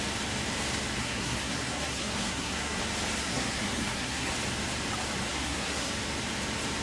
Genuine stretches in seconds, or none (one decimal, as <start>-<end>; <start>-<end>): 0.0-1.0; 2.8-3.2; 4.3-5.3; 5.9-6.8